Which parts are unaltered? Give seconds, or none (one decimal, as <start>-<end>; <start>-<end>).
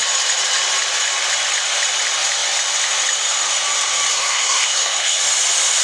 0.0-4.1; 5.2-5.8